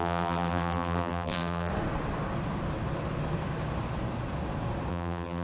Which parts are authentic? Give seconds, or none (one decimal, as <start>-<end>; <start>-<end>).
1.7-4.9